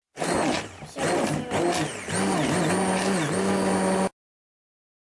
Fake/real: real